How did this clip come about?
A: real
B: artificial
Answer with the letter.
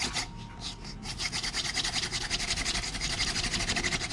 A